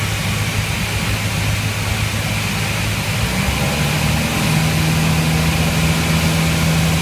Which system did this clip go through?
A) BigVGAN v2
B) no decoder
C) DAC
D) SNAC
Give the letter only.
B